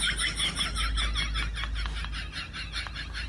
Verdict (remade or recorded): recorded